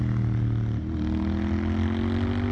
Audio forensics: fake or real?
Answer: real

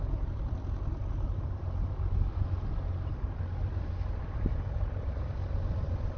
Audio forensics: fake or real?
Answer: real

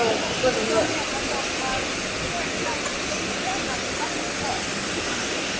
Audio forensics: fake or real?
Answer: real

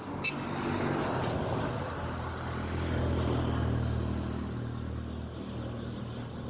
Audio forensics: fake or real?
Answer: real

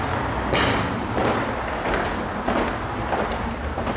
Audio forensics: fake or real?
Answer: real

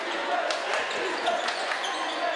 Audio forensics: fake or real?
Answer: fake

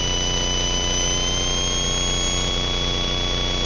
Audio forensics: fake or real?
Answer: real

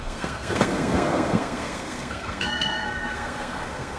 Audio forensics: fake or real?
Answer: fake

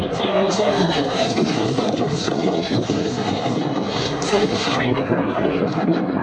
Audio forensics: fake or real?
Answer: fake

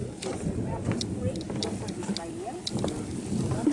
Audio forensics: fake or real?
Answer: real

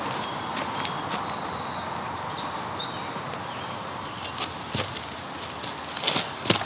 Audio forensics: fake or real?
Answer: real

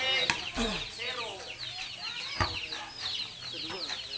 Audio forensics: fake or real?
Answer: real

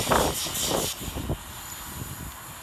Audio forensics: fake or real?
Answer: real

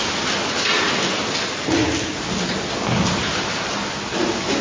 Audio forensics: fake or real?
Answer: real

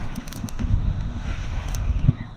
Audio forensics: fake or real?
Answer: fake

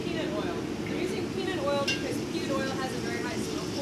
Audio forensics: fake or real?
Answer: real